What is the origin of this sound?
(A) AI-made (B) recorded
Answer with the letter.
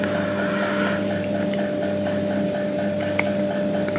B